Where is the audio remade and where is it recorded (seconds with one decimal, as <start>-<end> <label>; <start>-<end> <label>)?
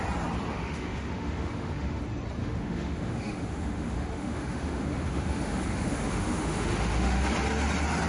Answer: 0.0-0.5 recorded; 0.5-2.0 remade; 2.0-2.4 recorded; 2.4-7.3 remade; 7.3-8.1 recorded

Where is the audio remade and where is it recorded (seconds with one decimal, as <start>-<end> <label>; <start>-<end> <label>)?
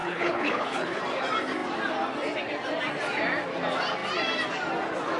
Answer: 0.0-1.0 remade; 1.0-5.2 recorded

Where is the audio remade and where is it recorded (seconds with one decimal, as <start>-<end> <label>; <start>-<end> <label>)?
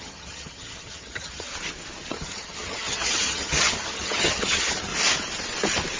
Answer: 0.0-1.5 remade; 1.5-2.1 recorded; 2.1-4.9 remade; 4.9-6.0 recorded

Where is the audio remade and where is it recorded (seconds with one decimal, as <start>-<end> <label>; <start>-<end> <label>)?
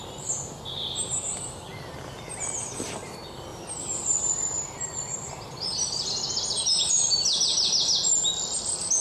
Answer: 0.0-3.5 recorded; 3.5-6.1 remade; 6.1-9.0 recorded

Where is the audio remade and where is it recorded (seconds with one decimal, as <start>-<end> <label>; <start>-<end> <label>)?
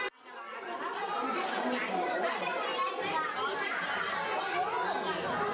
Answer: 0.0-0.5 recorded; 0.5-3.8 remade; 3.8-5.5 recorded